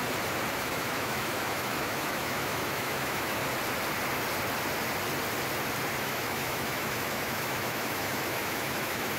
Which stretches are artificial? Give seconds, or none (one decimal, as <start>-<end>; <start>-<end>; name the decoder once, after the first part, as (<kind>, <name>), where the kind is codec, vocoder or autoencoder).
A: 0.5-3.4 (autoencoder, DAC-VAE); 6.0-9.2